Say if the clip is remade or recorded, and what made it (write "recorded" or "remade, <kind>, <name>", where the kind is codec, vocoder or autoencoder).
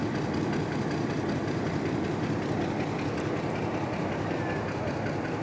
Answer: recorded